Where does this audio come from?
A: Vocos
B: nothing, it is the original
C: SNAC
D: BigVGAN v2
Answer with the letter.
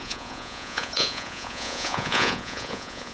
A